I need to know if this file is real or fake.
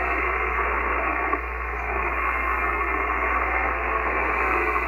fake